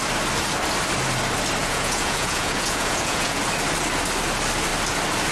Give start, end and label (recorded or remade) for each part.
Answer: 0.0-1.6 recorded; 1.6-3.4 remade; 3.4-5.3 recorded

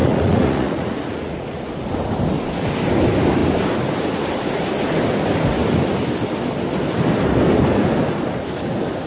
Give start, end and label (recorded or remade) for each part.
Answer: 0.0-1.6 remade; 1.6-9.1 recorded

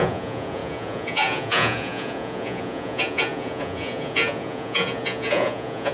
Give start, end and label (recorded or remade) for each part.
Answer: 0.0-5.9 remade